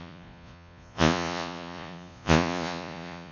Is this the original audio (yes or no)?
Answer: no